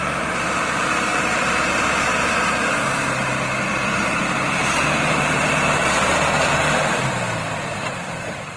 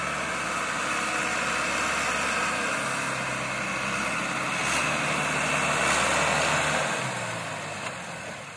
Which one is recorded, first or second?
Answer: second